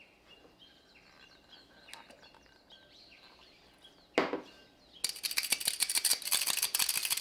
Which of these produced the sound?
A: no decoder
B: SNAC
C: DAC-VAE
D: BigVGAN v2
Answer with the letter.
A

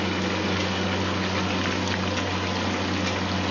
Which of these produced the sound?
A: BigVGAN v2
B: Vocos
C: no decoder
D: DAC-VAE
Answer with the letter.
C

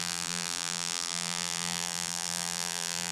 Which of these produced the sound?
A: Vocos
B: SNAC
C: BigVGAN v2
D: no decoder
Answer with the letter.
C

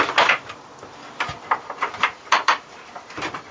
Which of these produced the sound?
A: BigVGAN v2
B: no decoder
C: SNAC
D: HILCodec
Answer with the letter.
A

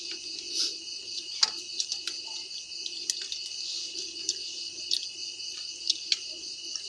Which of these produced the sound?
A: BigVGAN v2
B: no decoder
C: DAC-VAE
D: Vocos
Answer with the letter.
B